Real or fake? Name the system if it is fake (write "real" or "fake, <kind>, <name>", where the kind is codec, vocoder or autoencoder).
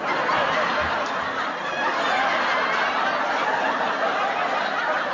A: real